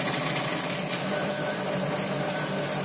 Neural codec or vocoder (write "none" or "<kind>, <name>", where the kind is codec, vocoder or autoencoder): none